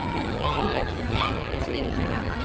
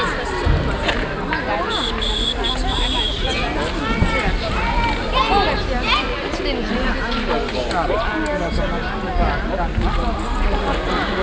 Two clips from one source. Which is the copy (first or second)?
first